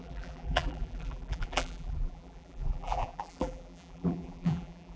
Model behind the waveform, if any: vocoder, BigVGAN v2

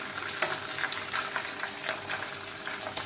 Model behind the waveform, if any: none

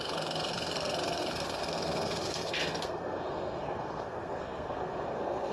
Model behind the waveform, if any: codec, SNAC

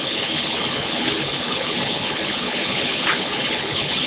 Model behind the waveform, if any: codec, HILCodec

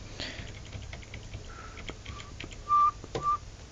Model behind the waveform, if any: none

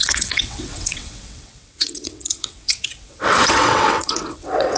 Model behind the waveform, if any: vocoder, WaveNeXt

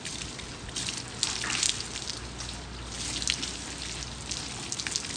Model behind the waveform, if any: none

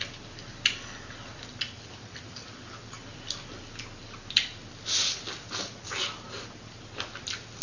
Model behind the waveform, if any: none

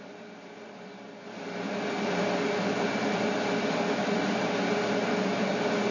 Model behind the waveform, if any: none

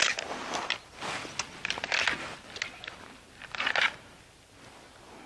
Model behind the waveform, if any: none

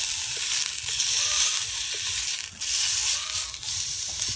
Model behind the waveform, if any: none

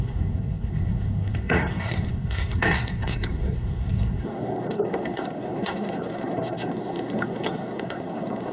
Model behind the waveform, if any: codec, SNAC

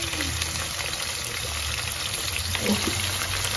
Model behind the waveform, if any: none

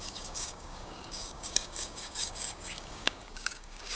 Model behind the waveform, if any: codec, DAC